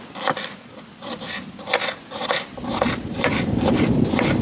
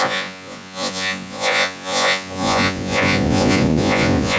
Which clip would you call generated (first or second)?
second